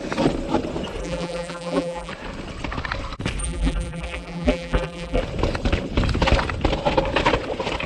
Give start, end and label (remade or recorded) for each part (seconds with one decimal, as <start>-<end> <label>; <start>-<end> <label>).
0.0-1.0 recorded; 1.0-2.1 remade; 2.1-3.4 recorded; 3.4-5.2 remade; 5.2-7.9 recorded